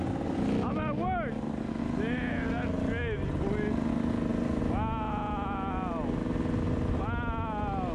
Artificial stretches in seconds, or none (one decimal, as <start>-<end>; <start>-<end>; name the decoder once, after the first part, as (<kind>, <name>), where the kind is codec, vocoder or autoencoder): none